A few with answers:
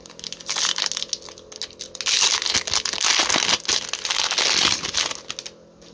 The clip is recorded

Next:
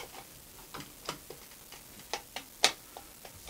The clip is recorded